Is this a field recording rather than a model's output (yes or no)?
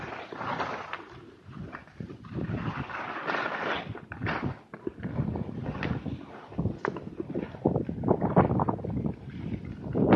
yes